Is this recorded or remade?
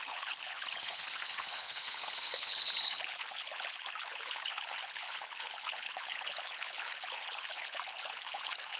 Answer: remade